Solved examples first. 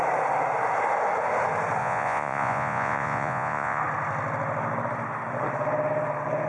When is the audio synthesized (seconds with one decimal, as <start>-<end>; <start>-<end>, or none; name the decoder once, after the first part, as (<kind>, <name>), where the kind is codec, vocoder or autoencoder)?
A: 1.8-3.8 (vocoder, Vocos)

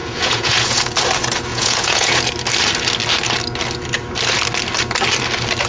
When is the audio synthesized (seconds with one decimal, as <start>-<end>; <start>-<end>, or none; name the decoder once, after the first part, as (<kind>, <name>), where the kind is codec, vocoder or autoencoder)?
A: 0.0-0.8 (vocoder, Vocos); 1.5-2.2

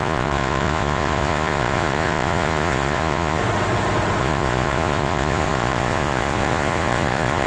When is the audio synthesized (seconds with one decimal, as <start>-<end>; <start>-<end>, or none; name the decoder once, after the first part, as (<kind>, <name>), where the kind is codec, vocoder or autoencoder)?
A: 0.0-3.4 (vocoder, Vocos); 4.2-7.5

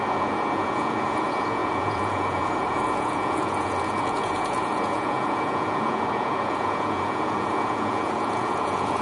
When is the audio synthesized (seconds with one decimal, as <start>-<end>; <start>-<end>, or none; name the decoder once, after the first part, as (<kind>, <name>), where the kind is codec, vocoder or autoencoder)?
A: 0.0-9.0 (vocoder, Vocos)

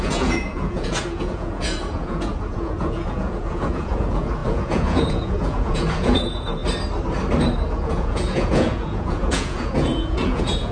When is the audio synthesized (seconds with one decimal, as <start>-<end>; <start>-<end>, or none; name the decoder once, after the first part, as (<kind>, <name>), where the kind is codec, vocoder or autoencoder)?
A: 0.0-6.6 (vocoder, Vocos); 7.7-10.7